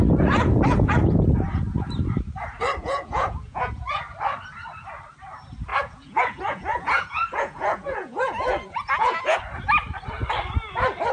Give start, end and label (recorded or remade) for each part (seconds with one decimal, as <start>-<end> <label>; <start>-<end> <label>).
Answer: 0.0-2.8 recorded; 2.8-4.0 remade; 4.0-5.7 recorded; 5.7-9.4 remade; 9.4-11.1 recorded